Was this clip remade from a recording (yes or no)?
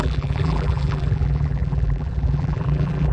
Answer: yes